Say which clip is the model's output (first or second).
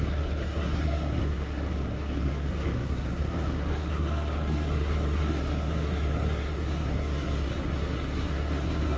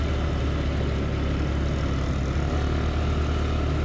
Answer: first